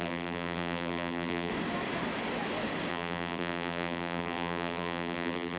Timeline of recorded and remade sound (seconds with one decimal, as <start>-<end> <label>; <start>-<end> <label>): 0.0-1.5 remade; 1.5-2.9 recorded; 2.9-5.6 remade

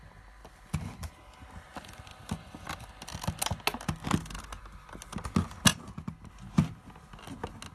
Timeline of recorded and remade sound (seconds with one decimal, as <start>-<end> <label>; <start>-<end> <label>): 0.0-0.4 recorded; 0.4-1.1 remade; 1.1-2.1 recorded; 2.1-2.9 remade; 2.9-5.7 recorded; 5.7-6.3 remade; 6.3-7.7 recorded

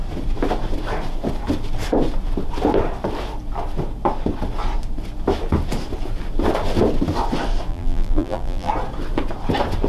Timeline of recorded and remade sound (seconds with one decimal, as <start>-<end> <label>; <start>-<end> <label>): 0.0-7.7 recorded; 7.7-8.7 remade; 8.7-9.9 recorded

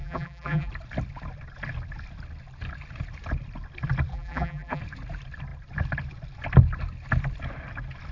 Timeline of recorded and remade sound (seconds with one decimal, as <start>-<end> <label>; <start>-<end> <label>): 0.0-0.7 remade; 0.7-4.1 recorded; 4.1-4.8 remade; 4.8-8.1 recorded

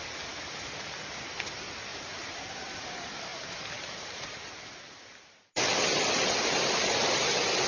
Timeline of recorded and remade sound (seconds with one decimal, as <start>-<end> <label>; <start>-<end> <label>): 0.0-1.9 recorded; 1.9-2.8 remade; 2.8-3.3 recorded; 3.3-4.7 remade; 4.7-7.7 recorded